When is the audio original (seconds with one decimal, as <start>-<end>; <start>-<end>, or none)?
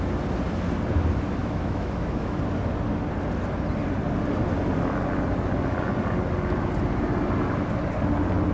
0.0-1.4; 2.4-8.5